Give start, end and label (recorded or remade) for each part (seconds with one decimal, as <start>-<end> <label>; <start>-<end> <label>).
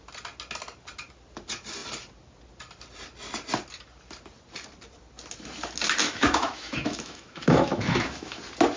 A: 0.0-6.0 recorded; 6.0-8.4 remade; 8.4-8.8 recorded